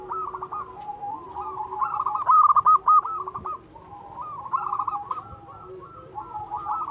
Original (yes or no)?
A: yes